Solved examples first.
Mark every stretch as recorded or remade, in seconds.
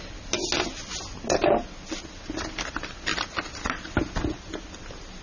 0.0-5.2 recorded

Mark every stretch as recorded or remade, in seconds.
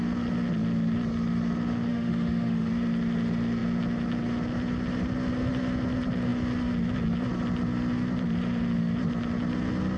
0.0-1.9 recorded; 1.9-2.7 remade; 2.7-10.0 recorded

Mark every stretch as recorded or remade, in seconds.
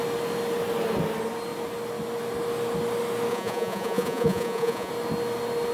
0.0-3.3 recorded; 3.3-4.9 remade; 4.9-5.7 recorded